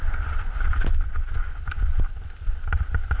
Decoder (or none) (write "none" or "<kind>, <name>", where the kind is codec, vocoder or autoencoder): none